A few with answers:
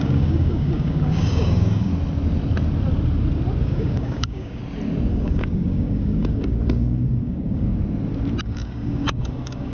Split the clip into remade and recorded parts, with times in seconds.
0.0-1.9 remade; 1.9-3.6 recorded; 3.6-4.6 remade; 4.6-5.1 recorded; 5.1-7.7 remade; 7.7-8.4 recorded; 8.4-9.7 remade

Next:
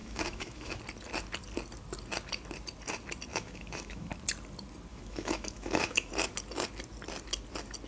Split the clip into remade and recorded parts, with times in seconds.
0.0-0.8 remade; 0.8-3.3 recorded; 3.3-4.1 remade; 4.1-4.9 recorded; 4.9-6.1 remade; 6.1-7.9 recorded

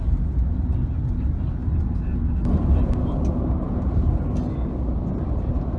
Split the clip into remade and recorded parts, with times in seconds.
0.0-5.8 recorded

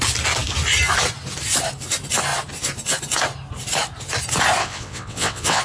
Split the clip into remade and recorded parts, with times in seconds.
0.0-4.6 recorded; 4.6-5.6 remade